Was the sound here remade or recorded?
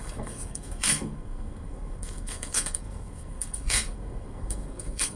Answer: remade